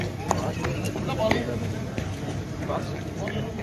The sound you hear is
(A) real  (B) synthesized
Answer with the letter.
B